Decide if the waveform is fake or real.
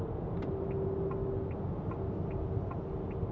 real